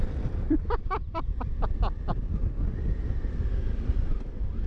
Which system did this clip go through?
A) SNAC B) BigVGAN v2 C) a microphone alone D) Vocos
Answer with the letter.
C